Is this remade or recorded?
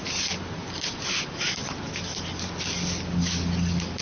recorded